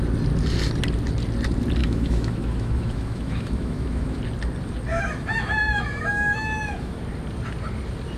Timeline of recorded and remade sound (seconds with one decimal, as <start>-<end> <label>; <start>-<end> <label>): 0.0-1.8 recorded; 1.8-4.2 remade; 4.2-4.9 recorded; 4.9-7.0 remade; 7.0-8.2 recorded